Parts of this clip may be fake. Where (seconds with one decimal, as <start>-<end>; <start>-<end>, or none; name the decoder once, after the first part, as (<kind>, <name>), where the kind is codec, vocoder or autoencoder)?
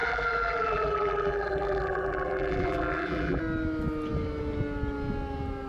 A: 0.0-3.4 (vocoder, BigVGAN v2)